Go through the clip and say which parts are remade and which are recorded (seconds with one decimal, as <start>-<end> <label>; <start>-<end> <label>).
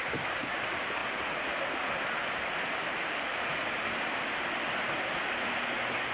0.0-6.1 recorded